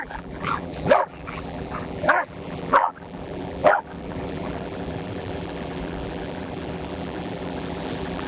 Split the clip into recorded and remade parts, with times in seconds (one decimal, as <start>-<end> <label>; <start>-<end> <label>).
0.0-8.3 remade

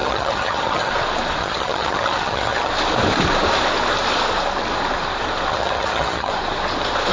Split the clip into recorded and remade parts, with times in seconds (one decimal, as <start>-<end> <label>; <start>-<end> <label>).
0.0-0.9 remade; 0.9-1.4 recorded; 1.4-2.7 remade; 2.7-5.5 recorded; 5.5-6.3 remade; 6.3-7.1 recorded

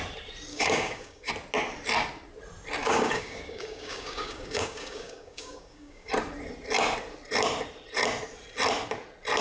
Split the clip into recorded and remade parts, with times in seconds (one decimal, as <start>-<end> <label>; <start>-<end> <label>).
0.0-0.5 recorded; 0.5-1.3 remade; 1.3-2.8 recorded; 2.8-6.1 remade; 6.1-9.4 recorded

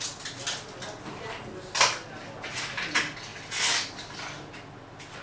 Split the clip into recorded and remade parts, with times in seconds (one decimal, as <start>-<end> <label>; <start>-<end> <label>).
0.0-5.2 recorded

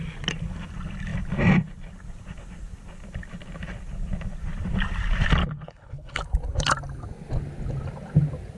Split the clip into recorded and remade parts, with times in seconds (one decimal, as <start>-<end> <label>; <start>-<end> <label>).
0.0-5.4 recorded; 5.4-6.2 remade; 6.2-8.6 recorded

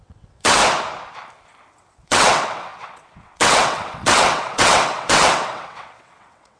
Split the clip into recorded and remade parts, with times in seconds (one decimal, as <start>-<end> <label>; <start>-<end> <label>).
0.0-0.6 remade; 0.6-1.7 recorded; 1.7-6.6 remade

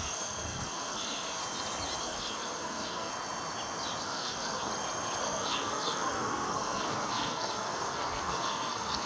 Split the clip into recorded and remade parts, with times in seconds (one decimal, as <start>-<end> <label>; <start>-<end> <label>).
0.0-1.4 remade; 1.4-2.0 recorded; 2.0-3.1 remade; 3.1-4.0 recorded; 4.0-4.7 remade; 4.7-5.2 recorded; 5.2-9.1 remade